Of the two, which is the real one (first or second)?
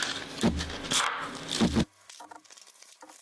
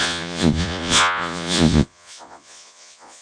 first